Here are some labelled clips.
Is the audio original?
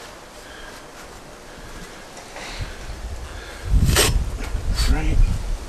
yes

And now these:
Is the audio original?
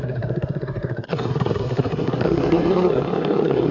no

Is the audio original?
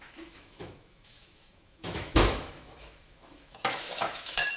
no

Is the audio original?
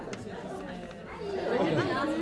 yes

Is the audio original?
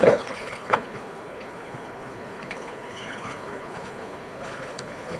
no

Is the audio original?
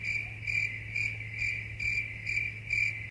yes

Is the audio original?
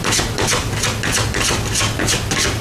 yes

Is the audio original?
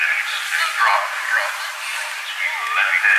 yes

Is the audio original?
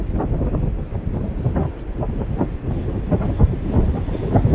yes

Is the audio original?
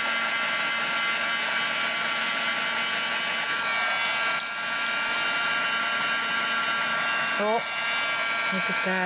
yes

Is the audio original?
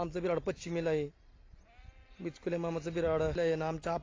yes